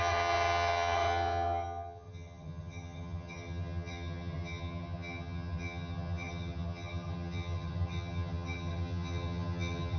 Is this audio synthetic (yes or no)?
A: yes